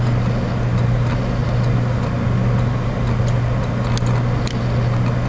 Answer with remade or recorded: recorded